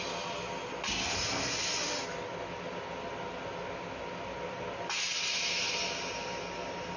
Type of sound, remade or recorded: recorded